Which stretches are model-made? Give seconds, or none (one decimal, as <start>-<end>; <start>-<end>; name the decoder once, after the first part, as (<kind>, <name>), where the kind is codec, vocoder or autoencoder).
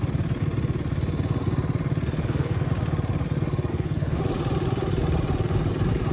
2.2-2.7 (codec, SNAC); 3.7-4.2